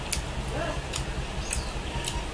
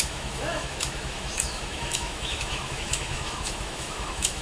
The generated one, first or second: second